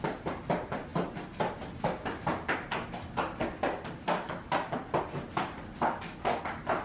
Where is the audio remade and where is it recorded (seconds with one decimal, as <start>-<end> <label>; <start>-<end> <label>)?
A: 0.0-6.8 recorded